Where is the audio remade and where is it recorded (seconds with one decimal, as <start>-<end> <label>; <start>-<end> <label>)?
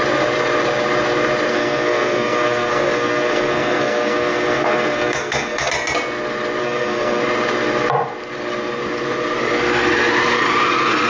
0.0-1.5 recorded; 1.5-5.7 remade; 5.7-6.6 recorded; 6.6-7.2 remade; 7.2-11.1 recorded